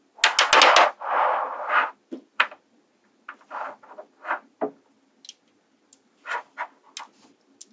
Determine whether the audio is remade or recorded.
recorded